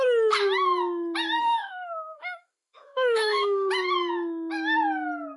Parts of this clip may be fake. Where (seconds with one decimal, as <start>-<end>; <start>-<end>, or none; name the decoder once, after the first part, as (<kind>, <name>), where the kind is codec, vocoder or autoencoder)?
1.4-3.7 (autoencoder, DAC-VAE)